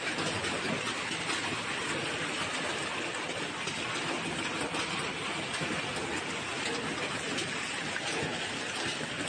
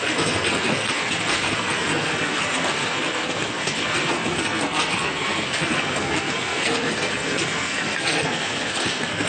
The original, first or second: first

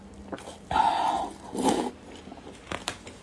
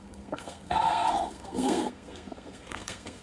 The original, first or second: first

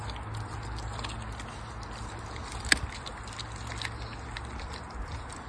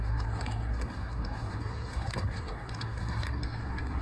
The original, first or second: first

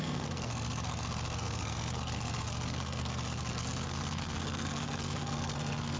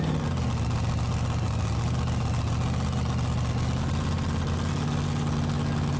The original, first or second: second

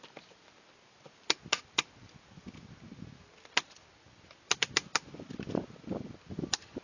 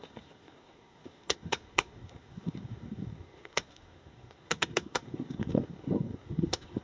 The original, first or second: first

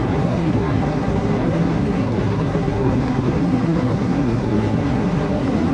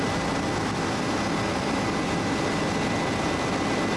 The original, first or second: second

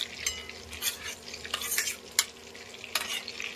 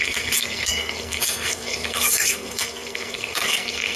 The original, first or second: first